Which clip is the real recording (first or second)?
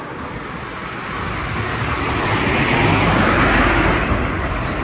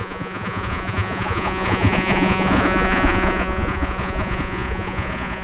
first